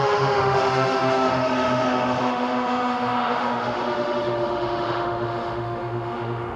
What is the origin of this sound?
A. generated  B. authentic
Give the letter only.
A